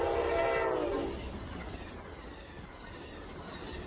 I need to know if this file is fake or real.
real